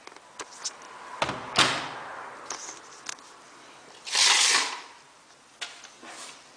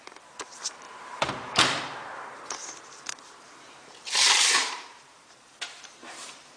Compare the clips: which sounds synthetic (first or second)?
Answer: second